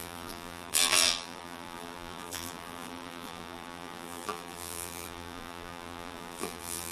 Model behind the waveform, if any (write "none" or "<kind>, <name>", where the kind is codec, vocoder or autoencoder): vocoder, BigVGAN v2